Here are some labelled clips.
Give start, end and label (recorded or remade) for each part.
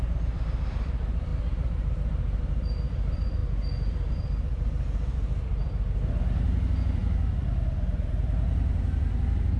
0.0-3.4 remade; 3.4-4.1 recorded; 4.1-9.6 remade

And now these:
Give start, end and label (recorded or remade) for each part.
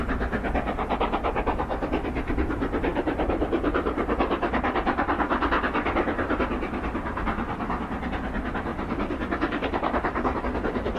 0.0-2.9 recorded; 2.9-5.1 remade; 5.1-8.7 recorded; 8.7-10.4 remade; 10.4-11.0 recorded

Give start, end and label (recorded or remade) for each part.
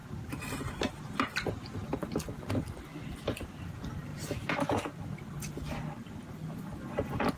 0.0-2.9 recorded; 2.9-3.6 remade; 3.6-7.4 recorded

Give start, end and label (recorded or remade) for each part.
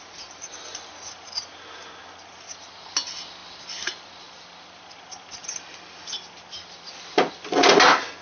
0.0-8.2 recorded